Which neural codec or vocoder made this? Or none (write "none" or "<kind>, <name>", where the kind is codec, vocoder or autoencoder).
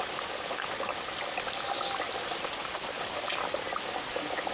none